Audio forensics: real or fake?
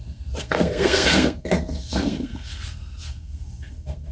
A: fake